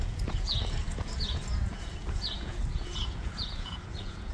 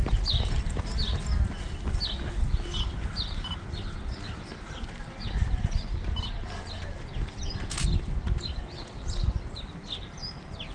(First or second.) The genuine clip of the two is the second